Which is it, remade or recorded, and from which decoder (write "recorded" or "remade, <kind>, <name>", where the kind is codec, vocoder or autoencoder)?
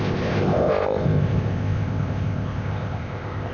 remade, codec, ZipCodec